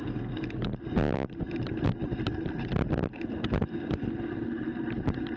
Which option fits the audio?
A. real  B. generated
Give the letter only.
A